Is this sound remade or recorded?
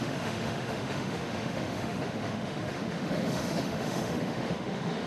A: remade